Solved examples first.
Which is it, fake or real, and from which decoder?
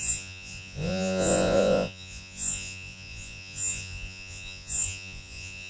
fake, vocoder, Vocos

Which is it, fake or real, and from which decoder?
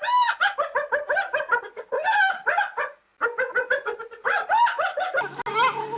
real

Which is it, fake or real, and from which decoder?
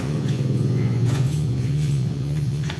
fake, vocoder, Vocos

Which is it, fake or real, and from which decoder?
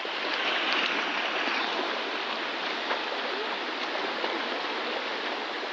real